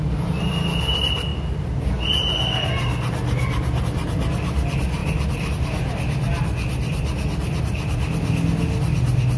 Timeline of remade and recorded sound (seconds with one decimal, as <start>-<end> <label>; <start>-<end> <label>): 0.0-9.4 recorded

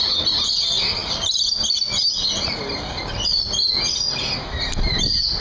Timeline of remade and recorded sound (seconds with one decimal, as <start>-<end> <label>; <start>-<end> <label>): 0.0-5.4 recorded

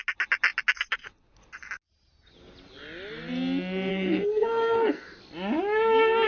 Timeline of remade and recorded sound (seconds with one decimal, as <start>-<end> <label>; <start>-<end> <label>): 0.0-3.9 recorded; 3.9-5.2 remade; 5.2-6.3 recorded

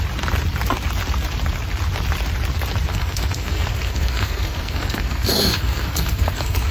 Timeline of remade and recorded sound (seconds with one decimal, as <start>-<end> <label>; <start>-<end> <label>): 0.0-2.9 recorded; 2.9-6.7 remade

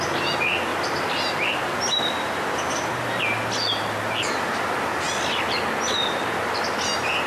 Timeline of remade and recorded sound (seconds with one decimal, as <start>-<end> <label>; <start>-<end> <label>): 0.0-7.3 recorded

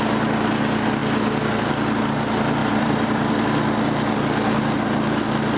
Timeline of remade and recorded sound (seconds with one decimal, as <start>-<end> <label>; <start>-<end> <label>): 0.0-2.6 recorded; 2.6-3.3 remade; 3.3-5.6 recorded

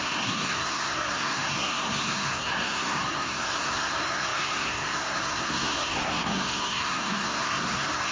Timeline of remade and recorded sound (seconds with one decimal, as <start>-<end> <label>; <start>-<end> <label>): 0.0-8.1 remade